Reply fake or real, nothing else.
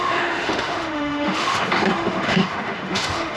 fake